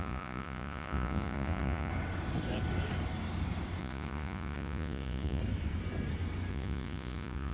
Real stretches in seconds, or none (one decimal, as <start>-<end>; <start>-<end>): 1.9-3.8; 5.4-6.5